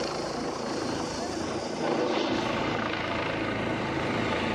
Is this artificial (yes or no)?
no